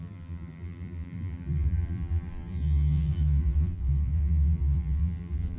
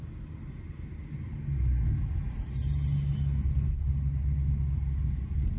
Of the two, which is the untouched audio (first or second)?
second